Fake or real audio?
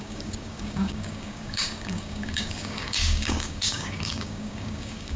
fake